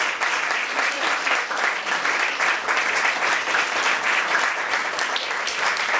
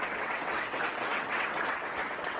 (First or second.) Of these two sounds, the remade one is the second